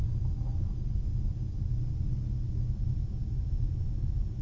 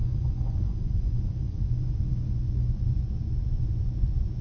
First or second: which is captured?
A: first